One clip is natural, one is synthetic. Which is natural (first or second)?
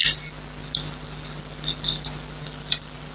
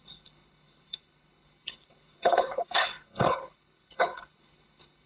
first